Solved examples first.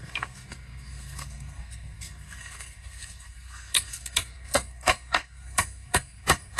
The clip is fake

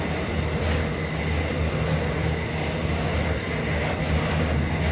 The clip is real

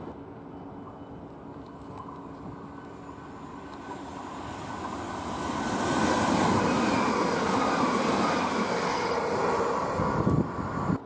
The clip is real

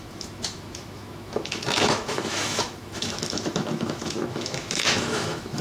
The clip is fake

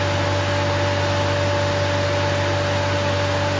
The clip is real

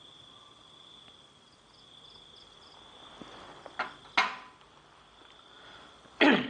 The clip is real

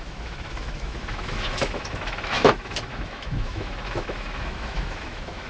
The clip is fake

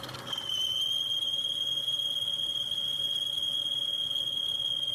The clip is real